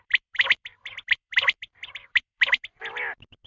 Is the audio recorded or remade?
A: remade